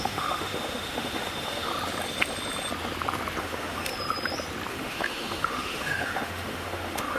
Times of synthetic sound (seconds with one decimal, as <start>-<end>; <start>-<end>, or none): 0.0-1.7; 3.4-3.9; 4.7-7.2